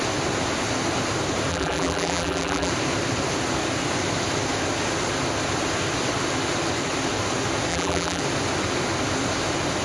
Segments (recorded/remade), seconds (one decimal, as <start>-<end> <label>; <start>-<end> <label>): 0.0-1.5 recorded; 1.5-2.7 remade; 2.7-7.7 recorded; 7.7-8.2 remade; 8.2-9.8 recorded